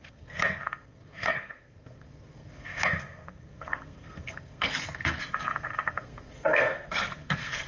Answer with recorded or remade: remade